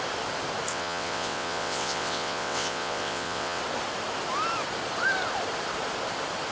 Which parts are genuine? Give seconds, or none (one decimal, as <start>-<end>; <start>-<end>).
0.0-0.7; 3.6-6.5